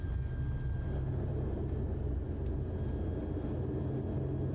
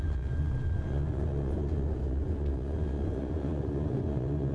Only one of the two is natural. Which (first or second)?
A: first